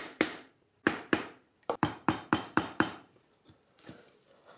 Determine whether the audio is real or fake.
fake